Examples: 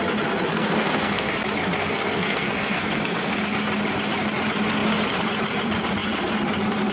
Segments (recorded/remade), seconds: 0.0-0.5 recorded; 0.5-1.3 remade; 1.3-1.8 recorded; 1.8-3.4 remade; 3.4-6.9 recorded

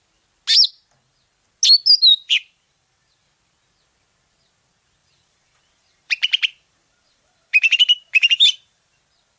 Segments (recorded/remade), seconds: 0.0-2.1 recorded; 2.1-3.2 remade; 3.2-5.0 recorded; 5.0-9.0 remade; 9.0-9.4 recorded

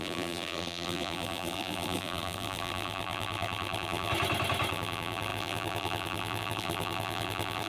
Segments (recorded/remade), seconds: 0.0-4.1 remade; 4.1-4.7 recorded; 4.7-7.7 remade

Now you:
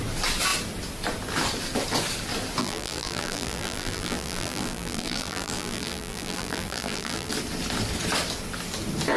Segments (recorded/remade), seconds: 0.0-2.6 recorded; 2.6-7.3 remade; 7.3-9.2 recorded

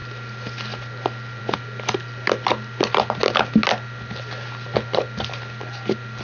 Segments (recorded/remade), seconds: 0.0-6.2 recorded